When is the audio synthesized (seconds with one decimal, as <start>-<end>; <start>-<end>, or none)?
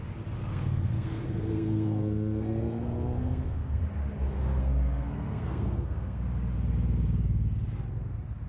0.4-3.8; 4.6-6.2